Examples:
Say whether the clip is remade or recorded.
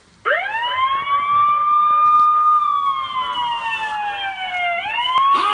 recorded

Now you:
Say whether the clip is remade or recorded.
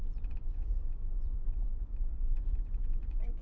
remade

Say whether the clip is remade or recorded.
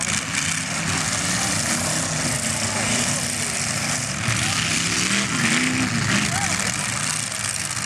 recorded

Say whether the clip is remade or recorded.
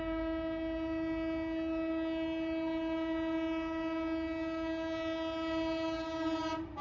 recorded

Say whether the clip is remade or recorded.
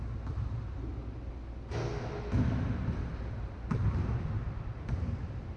recorded